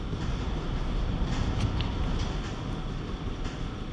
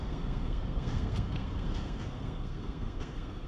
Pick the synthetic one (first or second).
second